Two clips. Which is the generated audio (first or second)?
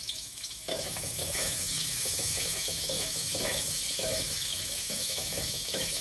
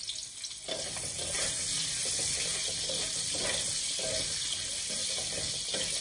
first